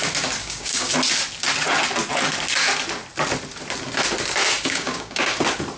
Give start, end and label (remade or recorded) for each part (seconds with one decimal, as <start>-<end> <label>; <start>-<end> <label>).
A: 0.0-0.4 recorded; 0.4-0.9 remade; 0.9-4.6 recorded; 4.6-5.2 remade; 5.2-5.8 recorded